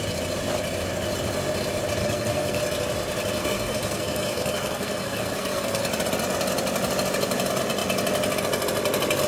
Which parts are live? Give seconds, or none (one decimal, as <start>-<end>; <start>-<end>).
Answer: 0.0-2.0; 2.6-3.4; 5.8-9.3